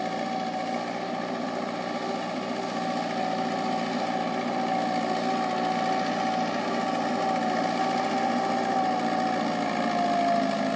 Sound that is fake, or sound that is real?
real